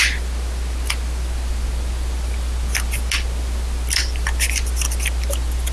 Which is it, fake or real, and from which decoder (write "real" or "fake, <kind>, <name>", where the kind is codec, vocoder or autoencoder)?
real